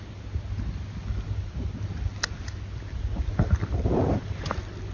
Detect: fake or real real